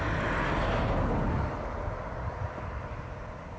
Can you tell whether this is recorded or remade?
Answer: recorded